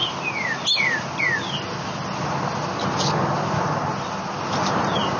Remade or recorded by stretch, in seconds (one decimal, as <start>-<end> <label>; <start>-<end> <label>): 0.0-5.2 recorded